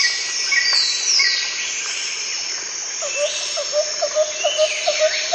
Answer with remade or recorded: recorded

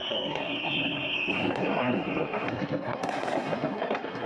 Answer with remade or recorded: remade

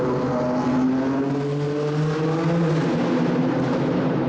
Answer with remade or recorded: recorded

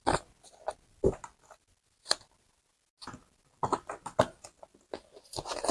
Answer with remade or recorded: recorded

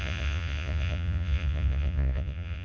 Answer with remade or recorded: remade